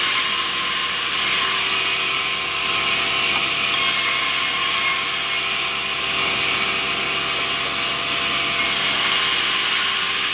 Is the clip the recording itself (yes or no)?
yes